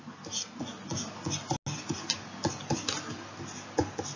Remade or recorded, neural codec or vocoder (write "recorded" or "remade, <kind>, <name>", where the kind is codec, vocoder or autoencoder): recorded